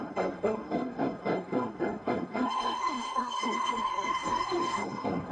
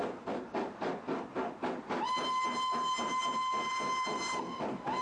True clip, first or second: second